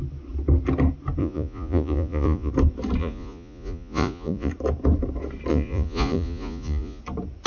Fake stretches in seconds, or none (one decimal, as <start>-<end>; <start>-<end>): 1.2-2.5; 3.0-4.5; 5.5-7.0